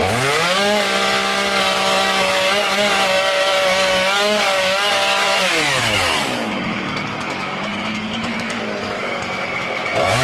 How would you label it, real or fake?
fake